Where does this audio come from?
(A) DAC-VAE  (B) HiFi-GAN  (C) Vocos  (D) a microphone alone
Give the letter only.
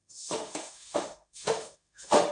A